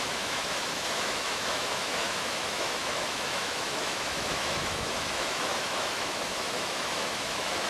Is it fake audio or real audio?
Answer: fake